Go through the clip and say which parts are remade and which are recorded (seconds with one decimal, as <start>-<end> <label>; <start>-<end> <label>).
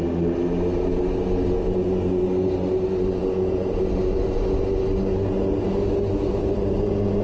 0.0-3.2 recorded; 3.2-3.8 remade; 3.8-7.2 recorded